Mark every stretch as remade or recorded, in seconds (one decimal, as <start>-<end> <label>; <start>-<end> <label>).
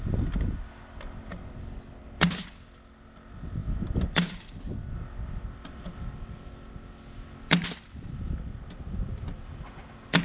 0.0-10.2 recorded